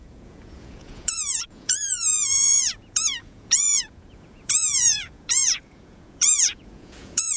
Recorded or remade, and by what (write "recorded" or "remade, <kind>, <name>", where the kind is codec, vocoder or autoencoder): remade, vocoder, Vocos